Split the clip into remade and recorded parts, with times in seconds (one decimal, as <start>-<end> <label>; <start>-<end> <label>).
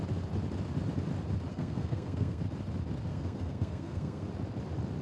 0.0-1.5 recorded; 1.5-2.4 remade; 2.4-3.1 recorded; 3.1-4.3 remade; 4.3-5.0 recorded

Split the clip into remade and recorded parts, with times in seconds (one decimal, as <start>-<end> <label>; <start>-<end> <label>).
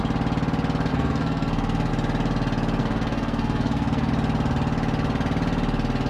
0.0-0.9 recorded; 0.9-1.9 remade; 1.9-2.8 recorded; 2.8-4.1 remade; 4.1-6.1 recorded